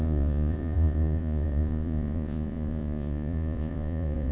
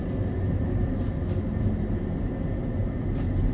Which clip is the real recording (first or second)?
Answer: second